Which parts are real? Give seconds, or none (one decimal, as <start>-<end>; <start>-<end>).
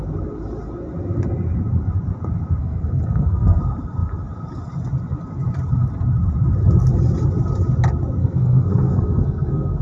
0.0-2.6; 3.6-8.2